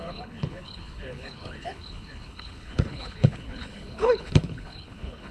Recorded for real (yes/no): no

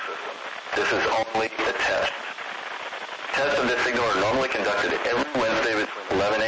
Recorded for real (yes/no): yes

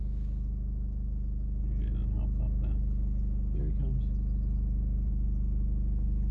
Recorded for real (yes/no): yes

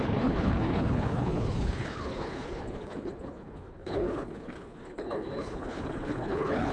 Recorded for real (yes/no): no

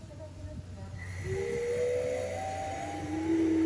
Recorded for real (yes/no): yes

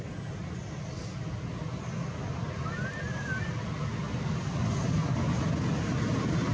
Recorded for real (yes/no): yes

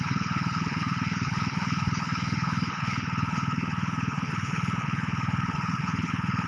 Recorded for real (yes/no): no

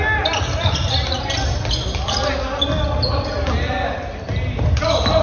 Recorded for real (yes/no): yes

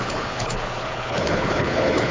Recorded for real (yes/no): no